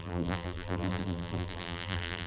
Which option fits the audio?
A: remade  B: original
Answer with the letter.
A